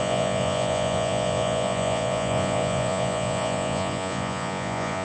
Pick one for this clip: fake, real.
fake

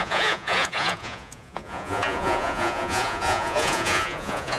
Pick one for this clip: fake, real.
fake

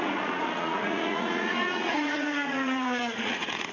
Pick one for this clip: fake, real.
fake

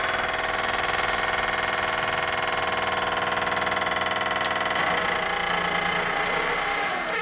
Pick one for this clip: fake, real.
real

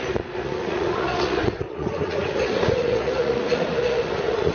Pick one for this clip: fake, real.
fake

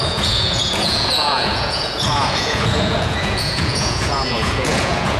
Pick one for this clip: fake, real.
fake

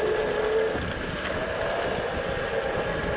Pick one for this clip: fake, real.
real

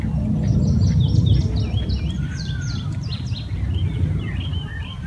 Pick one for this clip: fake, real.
real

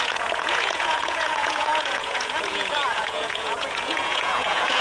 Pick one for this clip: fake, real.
fake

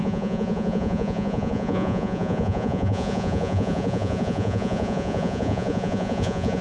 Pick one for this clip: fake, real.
fake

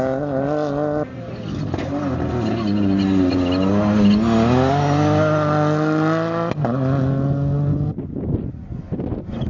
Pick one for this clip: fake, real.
real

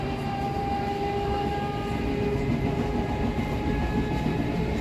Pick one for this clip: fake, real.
real